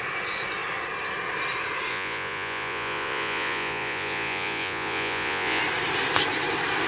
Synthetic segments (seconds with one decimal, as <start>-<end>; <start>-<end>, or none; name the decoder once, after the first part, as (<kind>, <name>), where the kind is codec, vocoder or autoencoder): 1.9-5.6 (vocoder, Vocos)